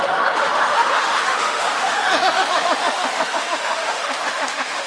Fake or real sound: fake